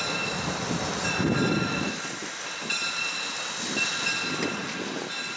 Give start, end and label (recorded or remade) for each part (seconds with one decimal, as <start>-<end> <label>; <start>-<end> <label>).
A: 0.0-5.4 recorded